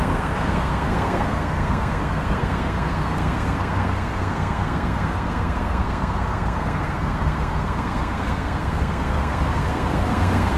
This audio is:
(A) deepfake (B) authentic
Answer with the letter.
A